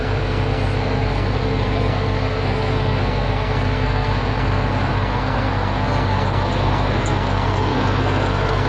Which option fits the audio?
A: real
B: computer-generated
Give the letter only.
B